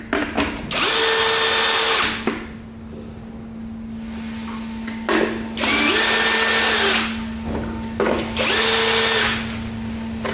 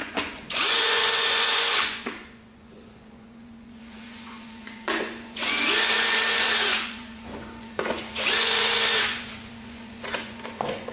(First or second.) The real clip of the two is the first